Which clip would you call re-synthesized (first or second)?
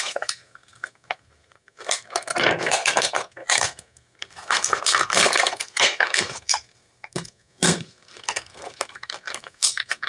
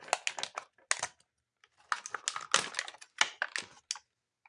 first